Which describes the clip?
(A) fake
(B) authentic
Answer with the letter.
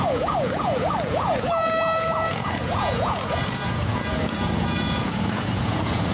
A